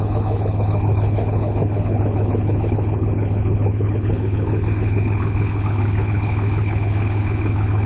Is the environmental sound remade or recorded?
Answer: remade